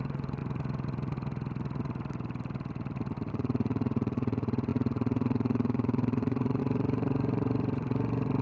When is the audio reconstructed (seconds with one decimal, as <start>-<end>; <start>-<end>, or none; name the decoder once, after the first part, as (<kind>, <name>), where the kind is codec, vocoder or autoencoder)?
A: 0.0-0.4 (vocoder, Vocos); 3.3-8.4

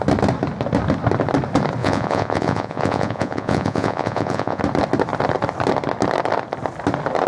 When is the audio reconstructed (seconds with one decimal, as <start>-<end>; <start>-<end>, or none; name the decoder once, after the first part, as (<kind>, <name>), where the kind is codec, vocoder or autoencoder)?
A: 1.8-4.6 (vocoder, Vocos)